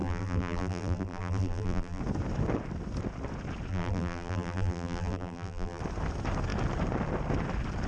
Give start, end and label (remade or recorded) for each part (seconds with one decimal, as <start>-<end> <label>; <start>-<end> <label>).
0.0-2.0 remade; 2.0-3.7 recorded; 3.7-5.8 remade; 5.8-7.9 recorded